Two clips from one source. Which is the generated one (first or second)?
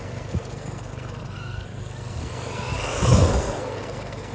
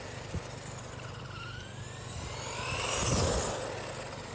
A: first